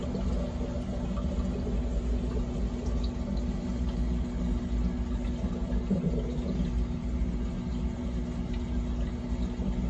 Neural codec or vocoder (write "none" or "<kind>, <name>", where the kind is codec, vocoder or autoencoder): none